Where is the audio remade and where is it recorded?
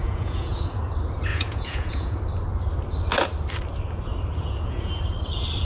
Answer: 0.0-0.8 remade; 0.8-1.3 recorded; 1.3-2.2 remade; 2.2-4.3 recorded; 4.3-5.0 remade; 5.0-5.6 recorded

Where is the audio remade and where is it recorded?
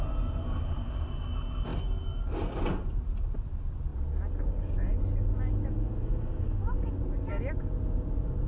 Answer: 0.0-8.5 recorded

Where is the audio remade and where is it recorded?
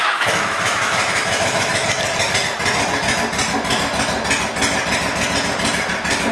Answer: 0.0-1.7 remade; 1.7-6.3 recorded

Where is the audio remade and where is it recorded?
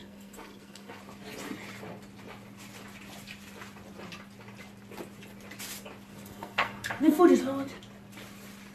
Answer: 0.0-1.0 remade; 1.0-6.1 recorded; 6.1-7.2 remade; 7.2-8.7 recorded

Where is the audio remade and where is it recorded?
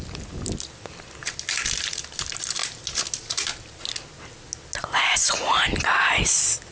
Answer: 0.0-6.7 recorded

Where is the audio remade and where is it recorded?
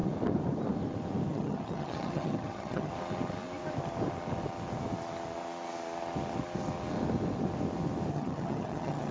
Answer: 0.0-1.3 recorded; 1.3-2.9 remade; 2.9-8.1 recorded; 8.1-9.1 remade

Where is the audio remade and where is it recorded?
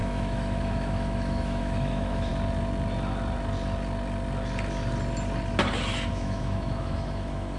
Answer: 0.0-2.3 remade; 2.3-6.1 recorded; 6.1-7.6 remade